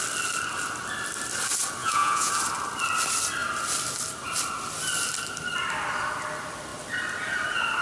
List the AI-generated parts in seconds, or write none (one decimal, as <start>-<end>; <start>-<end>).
1.8-2.3